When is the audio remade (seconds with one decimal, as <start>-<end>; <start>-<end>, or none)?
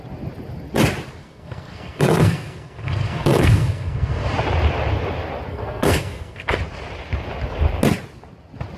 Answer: 1.2-4.3; 5.5-6.6